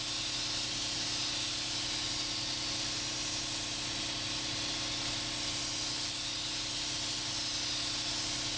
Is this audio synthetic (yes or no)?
no